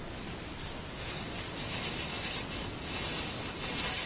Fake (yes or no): no